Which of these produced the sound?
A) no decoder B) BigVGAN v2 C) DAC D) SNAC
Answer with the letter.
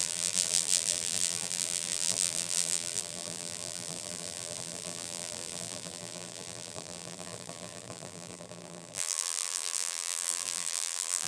B